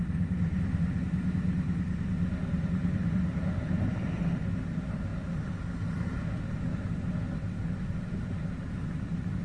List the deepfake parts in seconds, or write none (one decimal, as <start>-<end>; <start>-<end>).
none